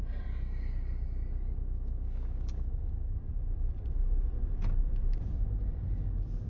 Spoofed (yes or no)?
yes